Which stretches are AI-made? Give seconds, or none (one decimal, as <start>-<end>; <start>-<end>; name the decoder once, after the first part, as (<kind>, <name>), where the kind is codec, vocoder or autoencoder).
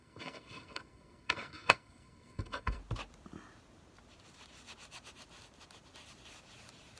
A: 0.0-2.8 (codec, SNAC)